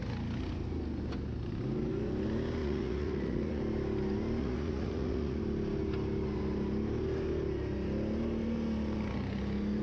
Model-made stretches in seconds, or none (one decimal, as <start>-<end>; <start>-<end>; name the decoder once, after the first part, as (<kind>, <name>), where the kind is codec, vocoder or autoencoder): 2.6-3.6 (vocoder, Vocos); 4.4-5.4